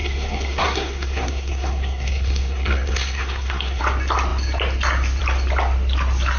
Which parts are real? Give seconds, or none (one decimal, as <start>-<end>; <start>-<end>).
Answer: 3.8-6.4